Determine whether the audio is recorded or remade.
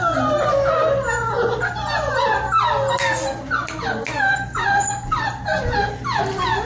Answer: recorded